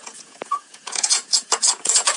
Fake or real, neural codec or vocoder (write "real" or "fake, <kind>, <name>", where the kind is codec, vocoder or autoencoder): fake, vocoder, Vocos